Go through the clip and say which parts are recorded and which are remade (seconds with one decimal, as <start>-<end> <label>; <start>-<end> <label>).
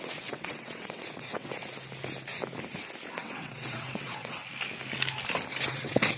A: 0.0-1.6 remade; 1.6-3.2 recorded; 3.2-4.4 remade; 4.4-5.7 recorded; 5.7-6.2 remade